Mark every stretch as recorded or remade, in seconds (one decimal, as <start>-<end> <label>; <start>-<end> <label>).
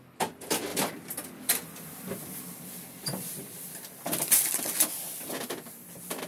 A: 0.0-0.7 recorded; 0.7-4.5 remade; 4.5-6.3 recorded